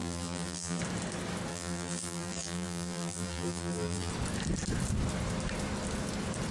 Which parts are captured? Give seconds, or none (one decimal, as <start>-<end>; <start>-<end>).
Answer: 0.8-1.5; 4.1-6.5